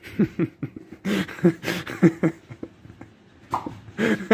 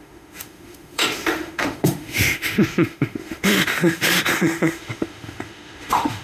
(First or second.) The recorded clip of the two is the first